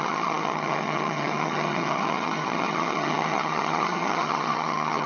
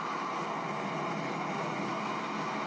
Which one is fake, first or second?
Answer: first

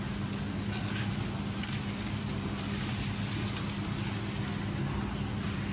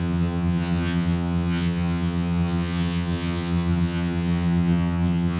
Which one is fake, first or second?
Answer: second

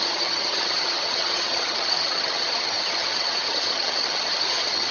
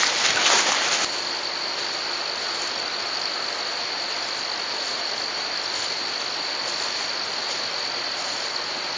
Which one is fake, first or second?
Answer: first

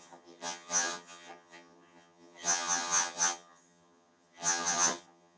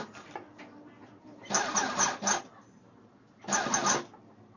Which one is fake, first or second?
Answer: first